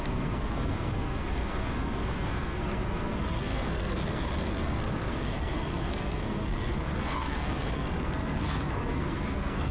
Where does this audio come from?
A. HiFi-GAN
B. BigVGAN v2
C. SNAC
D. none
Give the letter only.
C